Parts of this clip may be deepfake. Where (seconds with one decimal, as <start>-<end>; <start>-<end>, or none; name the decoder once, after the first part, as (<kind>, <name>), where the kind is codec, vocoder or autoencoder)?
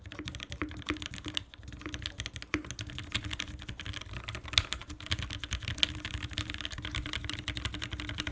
none